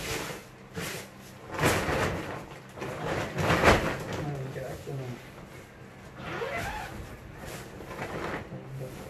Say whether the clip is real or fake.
real